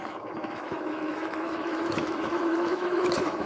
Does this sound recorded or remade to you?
remade